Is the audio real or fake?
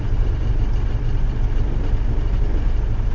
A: real